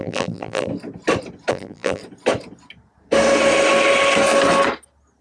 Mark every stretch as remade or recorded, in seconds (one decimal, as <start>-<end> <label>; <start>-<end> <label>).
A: 0.0-0.7 remade; 0.7-1.5 recorded; 1.5-2.0 remade; 2.0-5.2 recorded